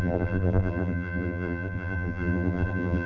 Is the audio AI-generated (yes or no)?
yes